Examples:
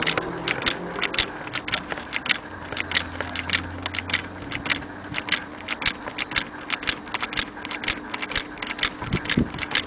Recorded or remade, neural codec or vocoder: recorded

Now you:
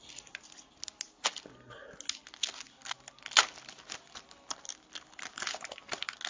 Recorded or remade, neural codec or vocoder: recorded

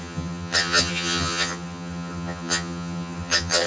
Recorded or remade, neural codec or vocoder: remade, vocoder, HiFi-GAN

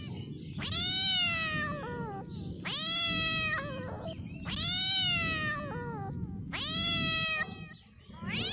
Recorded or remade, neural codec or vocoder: recorded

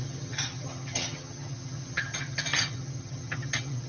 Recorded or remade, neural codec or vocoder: remade, vocoder, HiFi-GAN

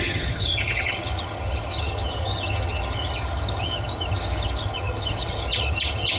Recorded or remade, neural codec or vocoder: remade, vocoder, HiFi-GAN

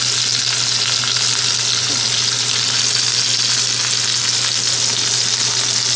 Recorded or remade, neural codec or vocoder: recorded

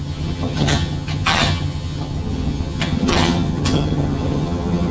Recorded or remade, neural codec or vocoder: remade, vocoder, HiFi-GAN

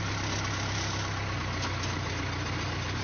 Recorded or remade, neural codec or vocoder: recorded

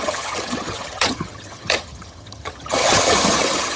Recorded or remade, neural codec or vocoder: remade, vocoder, HiFi-GAN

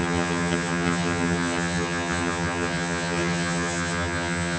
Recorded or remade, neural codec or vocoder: remade, vocoder, HiFi-GAN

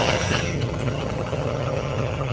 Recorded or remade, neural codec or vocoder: remade, vocoder, HiFi-GAN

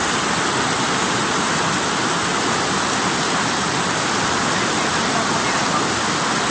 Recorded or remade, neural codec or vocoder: recorded